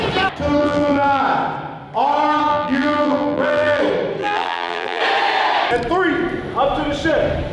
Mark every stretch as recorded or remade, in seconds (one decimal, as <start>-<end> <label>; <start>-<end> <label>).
0.0-0.6 recorded; 0.6-1.2 remade; 1.2-2.5 recorded; 2.5-3.8 remade; 3.8-4.2 recorded; 4.2-5.0 remade; 5.0-7.5 recorded